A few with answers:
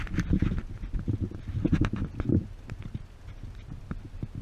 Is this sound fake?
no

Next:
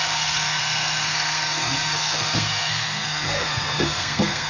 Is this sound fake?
yes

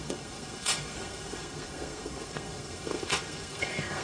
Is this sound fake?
yes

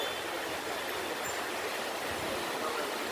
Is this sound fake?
no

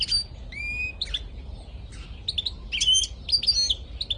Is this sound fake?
no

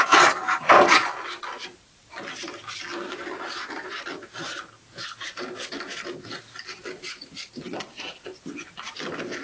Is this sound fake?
no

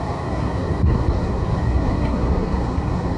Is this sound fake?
yes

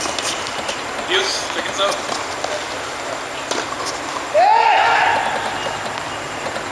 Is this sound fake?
no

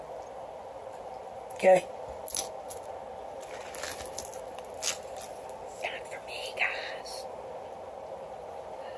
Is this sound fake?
no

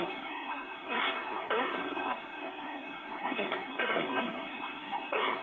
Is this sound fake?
yes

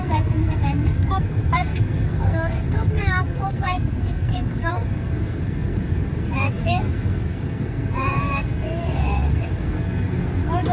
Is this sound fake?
yes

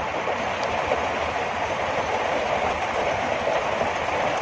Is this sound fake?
no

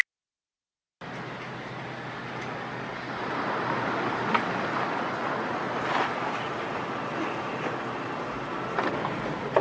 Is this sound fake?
no